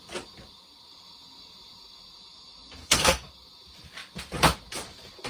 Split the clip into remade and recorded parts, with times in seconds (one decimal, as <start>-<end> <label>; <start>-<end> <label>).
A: 0.0-2.8 recorded; 2.8-3.3 remade; 3.3-5.3 recorded